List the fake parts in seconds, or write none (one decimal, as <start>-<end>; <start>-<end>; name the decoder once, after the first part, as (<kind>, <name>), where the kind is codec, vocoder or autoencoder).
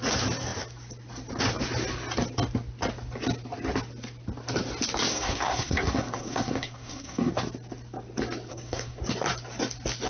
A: 5.1-7.3 (codec, SNAC); 8.5-9.0